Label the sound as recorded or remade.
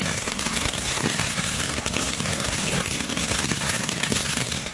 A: remade